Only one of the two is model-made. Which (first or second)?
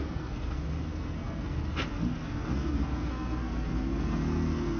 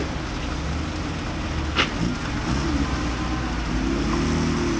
first